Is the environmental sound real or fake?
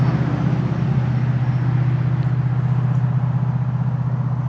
real